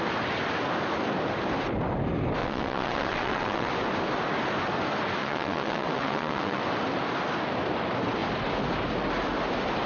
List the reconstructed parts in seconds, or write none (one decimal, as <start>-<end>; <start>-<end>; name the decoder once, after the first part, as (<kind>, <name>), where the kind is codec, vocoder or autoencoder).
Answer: 2.4-3.7 (vocoder, WaveNeXt); 5.2-6.6